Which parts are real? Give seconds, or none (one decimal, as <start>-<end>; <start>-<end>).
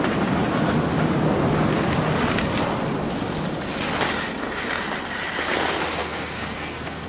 0.0-6.0